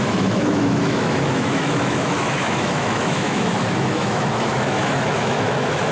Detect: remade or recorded remade